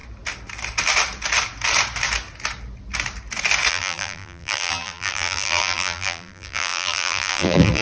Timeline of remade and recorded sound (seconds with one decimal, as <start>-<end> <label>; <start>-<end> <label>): 0.0-3.7 recorded; 3.7-7.8 remade